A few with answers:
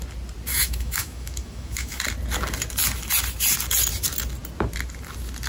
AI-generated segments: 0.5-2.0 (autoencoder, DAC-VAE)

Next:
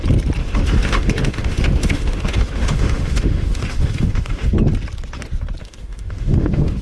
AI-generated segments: 0.4-4.5 (autoencoder, DAC-VAE); 5.6-6.8

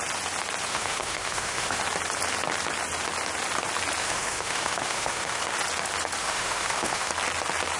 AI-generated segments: 0.7-1.8 (autoencoder, DAC-VAE); 4.0-5.4; 6.2-7.1

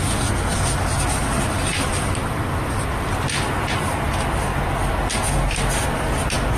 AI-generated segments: none

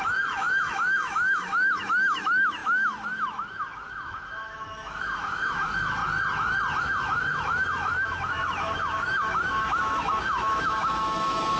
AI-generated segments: 0.0-6.0 (autoencoder, DAC-VAE); 6.8-11.6

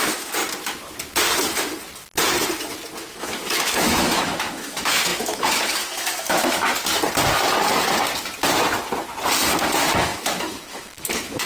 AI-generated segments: 0.0-0.4 (autoencoder, DAC-VAE); 3.1-6.7; 9.7-11.5

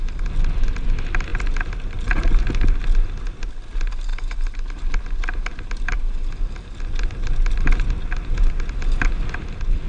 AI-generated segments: none

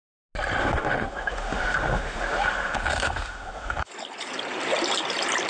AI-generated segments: 0.6-3.9 (autoencoder, DAC-VAE)